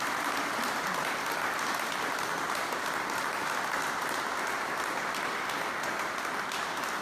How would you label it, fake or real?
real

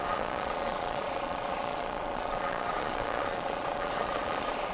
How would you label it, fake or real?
fake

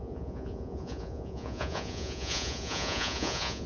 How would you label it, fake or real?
fake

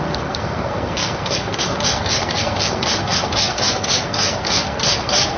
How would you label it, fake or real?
fake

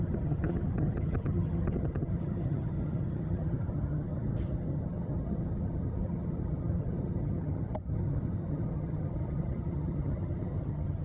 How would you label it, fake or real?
fake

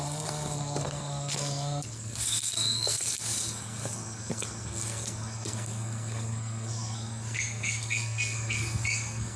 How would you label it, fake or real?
fake